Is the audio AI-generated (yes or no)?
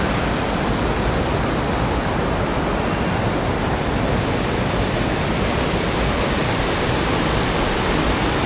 no